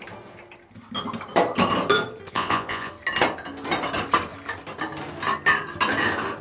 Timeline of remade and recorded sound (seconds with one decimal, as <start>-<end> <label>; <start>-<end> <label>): 0.0-2.3 recorded; 2.3-2.9 remade; 2.9-6.4 recorded